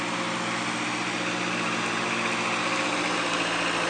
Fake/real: real